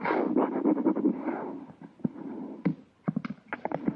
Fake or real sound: real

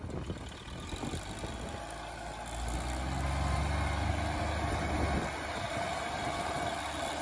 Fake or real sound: real